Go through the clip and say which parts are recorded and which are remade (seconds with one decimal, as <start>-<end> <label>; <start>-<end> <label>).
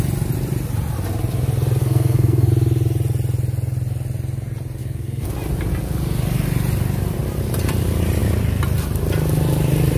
0.0-1.8 recorded; 1.8-2.5 remade; 2.5-4.8 recorded; 4.8-5.3 remade; 5.3-10.0 recorded